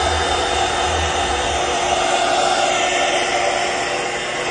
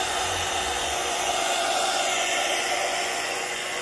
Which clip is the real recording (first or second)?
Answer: first